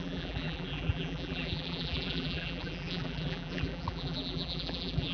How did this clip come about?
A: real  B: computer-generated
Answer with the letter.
B